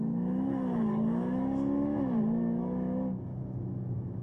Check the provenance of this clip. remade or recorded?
remade